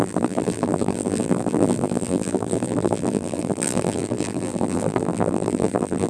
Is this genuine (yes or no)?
no